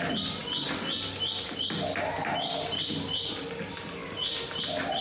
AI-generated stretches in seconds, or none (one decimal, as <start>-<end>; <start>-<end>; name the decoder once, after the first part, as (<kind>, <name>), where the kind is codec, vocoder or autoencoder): none